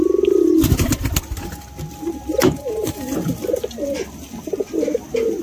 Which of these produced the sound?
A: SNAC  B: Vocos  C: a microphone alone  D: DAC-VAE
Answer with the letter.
C